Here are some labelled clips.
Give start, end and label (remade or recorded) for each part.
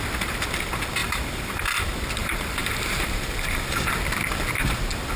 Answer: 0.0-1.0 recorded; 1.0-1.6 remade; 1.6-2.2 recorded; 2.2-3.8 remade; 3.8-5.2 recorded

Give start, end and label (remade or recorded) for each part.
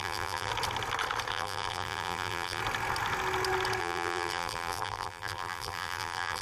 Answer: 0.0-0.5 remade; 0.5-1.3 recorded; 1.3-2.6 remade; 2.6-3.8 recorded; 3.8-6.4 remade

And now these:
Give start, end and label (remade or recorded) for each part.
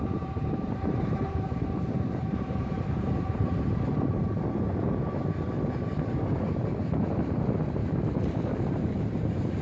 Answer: 0.0-4.2 remade; 4.2-5.8 recorded; 5.8-9.6 remade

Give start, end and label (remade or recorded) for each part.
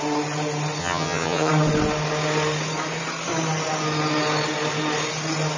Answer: 0.0-0.8 recorded; 0.8-1.5 remade; 1.5-5.6 recorded